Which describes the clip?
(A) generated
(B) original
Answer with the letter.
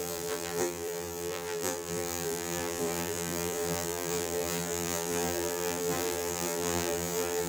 A